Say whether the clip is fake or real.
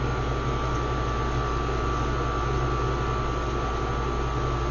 real